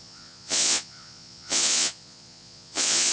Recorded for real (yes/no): no